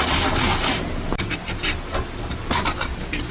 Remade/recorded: recorded